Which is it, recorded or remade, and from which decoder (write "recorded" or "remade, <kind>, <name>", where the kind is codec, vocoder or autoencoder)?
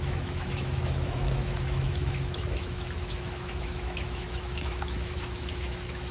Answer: remade, autoencoder, DAC-VAE